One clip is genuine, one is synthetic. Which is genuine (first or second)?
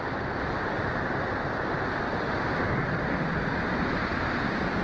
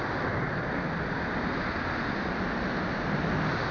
second